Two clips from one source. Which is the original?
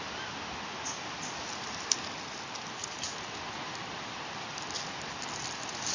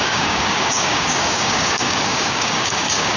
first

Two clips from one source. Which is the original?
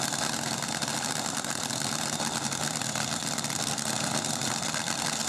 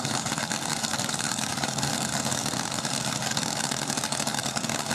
first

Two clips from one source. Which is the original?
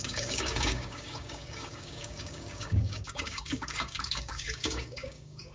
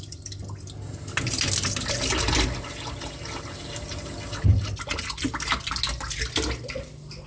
second